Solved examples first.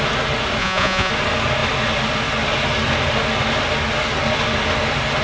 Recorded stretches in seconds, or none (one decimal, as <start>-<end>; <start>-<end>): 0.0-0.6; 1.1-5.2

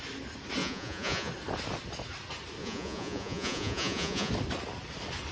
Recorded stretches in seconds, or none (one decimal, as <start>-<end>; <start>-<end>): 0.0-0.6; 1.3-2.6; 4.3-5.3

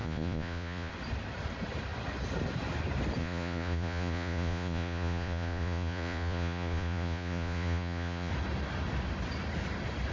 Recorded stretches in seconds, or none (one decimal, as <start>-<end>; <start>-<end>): 0.9-3.2; 8.3-10.1

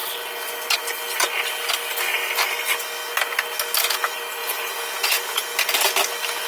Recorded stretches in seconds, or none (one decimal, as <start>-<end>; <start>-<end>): 0.0-4.4; 5.4-6.5

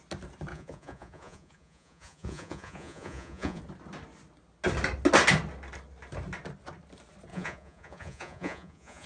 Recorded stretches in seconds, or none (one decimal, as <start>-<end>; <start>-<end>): 0.0-0.5; 3.6-7.3

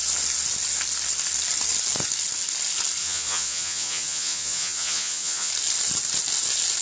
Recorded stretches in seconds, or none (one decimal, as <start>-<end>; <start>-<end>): 0.0-3.0; 5.5-6.8